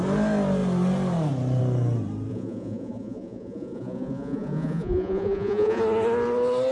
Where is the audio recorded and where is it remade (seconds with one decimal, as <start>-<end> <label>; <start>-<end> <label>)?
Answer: 0.0-2.3 recorded; 2.3-5.8 remade; 5.8-6.7 recorded